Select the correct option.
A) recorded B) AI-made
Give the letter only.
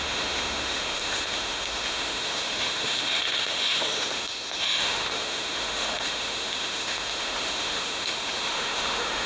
B